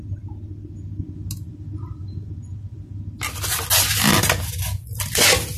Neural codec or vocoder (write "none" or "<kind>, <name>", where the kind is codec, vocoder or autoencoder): none